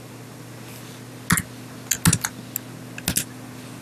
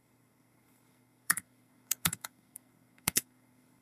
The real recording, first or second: first